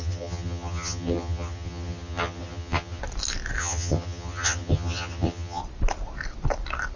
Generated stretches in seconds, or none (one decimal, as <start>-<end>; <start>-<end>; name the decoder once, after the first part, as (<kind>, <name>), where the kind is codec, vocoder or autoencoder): 0.0-3.0 (vocoder, HiFi-GAN); 3.6-5.6